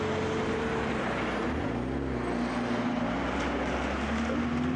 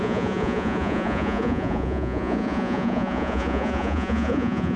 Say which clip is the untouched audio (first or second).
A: first